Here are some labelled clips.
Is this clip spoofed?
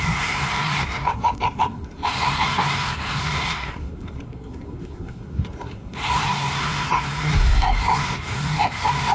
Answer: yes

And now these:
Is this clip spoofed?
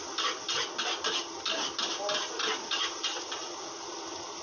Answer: no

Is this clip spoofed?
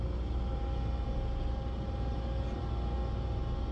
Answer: no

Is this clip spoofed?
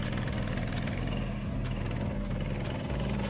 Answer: no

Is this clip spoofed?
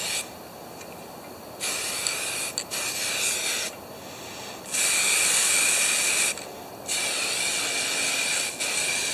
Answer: no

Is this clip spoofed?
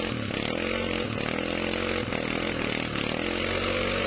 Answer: no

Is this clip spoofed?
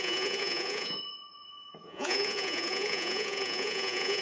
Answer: yes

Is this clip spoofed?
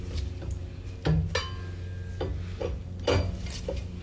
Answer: no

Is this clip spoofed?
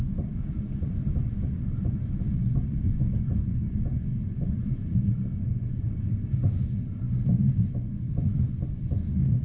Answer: yes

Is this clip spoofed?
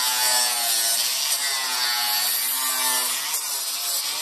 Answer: no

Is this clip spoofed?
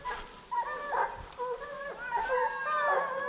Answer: no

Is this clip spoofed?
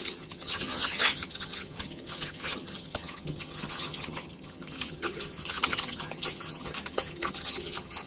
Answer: yes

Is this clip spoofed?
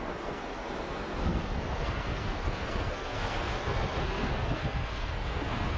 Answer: yes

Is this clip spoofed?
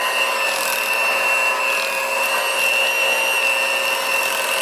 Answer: no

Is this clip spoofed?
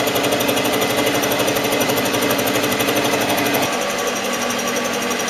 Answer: no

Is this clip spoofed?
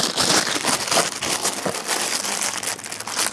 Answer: no